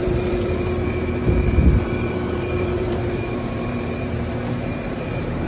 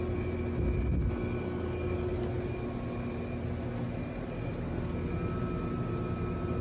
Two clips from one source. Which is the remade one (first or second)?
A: first